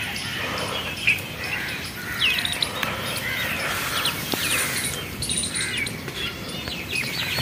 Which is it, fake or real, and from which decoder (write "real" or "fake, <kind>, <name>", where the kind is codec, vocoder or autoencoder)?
real